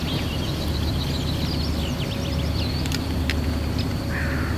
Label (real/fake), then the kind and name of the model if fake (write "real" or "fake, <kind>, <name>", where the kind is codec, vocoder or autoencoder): real